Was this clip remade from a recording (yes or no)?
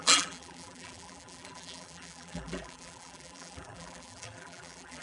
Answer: yes